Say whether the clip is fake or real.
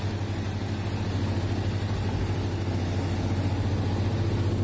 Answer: real